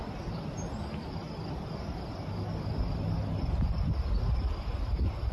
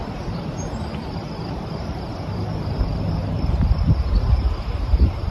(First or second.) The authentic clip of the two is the first